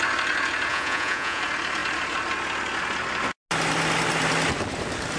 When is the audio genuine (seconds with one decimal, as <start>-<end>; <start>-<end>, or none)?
0.0-0.7; 1.4-5.2